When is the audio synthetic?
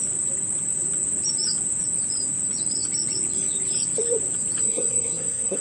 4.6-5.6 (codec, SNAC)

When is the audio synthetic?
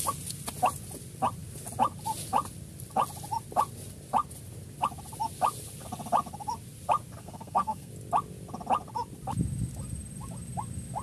7.2-7.9 (codec, SNAC)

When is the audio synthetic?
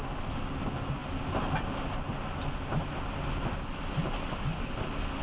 none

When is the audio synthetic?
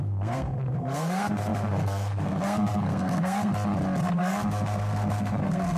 0.0-3.5 (codec, SNAC); 4.0-5.8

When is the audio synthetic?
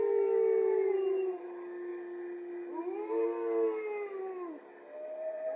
none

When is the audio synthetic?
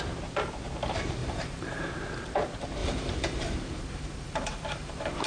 1.2-1.8 (vocoder, BigVGAN v2); 2.8-5.3